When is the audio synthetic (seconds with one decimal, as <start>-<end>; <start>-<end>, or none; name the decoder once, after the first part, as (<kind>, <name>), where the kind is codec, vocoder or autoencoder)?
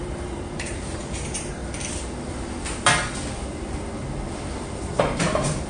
0.0-1.6 (vocoder, BigVGAN v2); 5.0-5.7